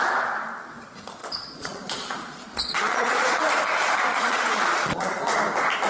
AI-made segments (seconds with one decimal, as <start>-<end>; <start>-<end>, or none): 1.2-3.4; 4.1-5.2